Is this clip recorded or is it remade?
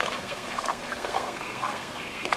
remade